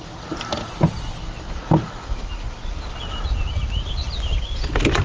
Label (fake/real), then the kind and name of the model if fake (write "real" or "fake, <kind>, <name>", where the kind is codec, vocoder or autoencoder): real